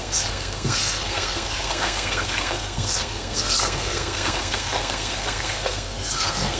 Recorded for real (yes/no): no